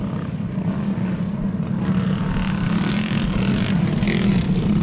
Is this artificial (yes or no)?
no